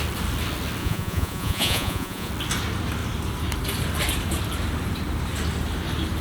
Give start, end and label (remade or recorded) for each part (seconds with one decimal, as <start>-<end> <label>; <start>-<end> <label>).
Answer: 0.0-0.8 recorded; 0.8-2.3 remade; 2.3-6.2 recorded